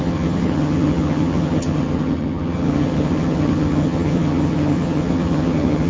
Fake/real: fake